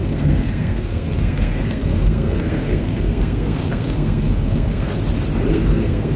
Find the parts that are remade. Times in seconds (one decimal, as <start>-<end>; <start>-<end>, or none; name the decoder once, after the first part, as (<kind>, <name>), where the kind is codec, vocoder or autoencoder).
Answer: 0.0-4.9 (codec, SNAC); 5.5-6.2